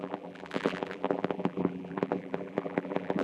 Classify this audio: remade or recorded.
remade